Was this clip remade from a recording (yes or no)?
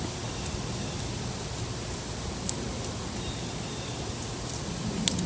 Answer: no